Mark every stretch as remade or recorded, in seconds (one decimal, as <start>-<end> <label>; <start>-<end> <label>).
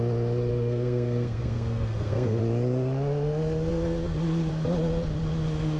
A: 0.0-0.5 recorded; 0.5-2.4 remade; 2.4-5.8 recorded